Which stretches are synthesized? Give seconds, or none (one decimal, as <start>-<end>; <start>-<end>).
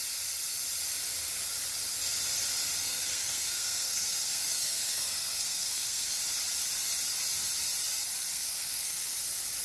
2.8-6.2; 8.3-9.1